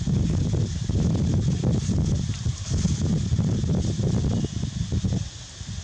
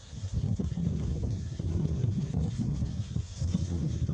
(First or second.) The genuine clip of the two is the first